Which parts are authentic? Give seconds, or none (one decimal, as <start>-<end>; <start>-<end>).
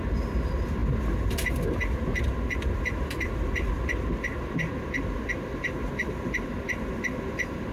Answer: 0.0-7.7